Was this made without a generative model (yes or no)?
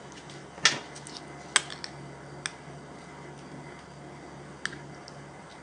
yes